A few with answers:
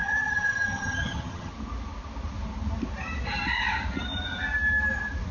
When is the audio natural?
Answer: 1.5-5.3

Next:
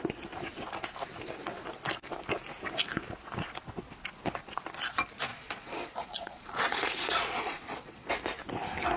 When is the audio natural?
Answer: 0.0-5.3; 8.1-9.0

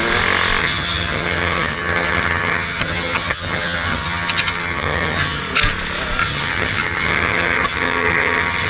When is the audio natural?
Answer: 0.0-0.6; 5.4-6.2

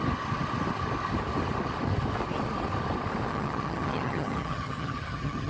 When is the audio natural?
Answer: 0.0-3.3